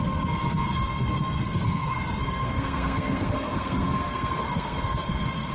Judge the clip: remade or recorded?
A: remade